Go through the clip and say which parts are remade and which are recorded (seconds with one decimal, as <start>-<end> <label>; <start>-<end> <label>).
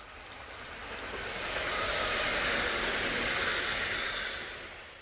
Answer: 0.0-5.0 recorded